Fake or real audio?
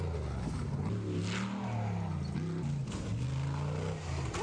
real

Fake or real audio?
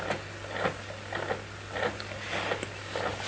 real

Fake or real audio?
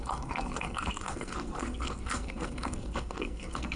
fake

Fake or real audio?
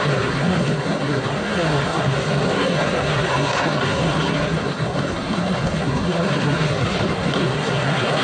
fake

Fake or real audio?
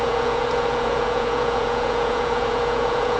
fake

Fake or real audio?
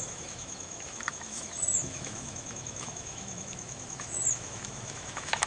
fake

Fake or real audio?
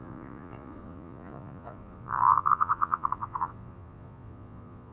fake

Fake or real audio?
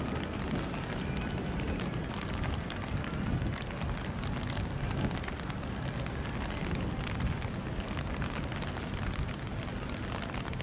real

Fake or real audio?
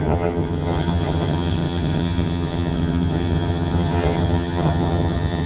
fake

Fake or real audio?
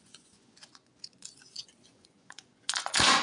fake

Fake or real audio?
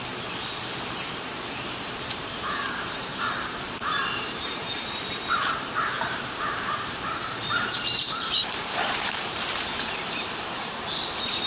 fake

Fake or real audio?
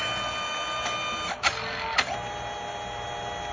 real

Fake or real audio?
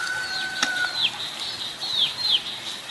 real